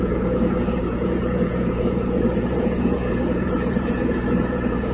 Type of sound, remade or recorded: remade